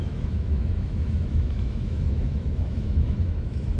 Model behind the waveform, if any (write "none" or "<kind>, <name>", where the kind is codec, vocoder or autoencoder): autoencoder, DAC-VAE